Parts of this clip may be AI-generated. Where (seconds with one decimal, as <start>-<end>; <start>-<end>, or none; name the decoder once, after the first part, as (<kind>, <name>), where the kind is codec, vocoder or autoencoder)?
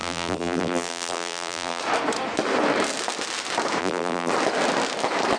0.0-1.8 (vocoder, BigVGAN v2); 3.8-4.3